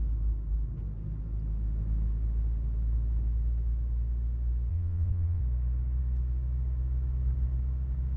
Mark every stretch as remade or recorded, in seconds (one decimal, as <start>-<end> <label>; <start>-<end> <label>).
0.0-4.7 recorded; 4.7-5.4 remade; 5.4-8.2 recorded